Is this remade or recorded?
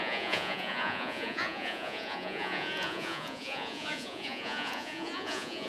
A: remade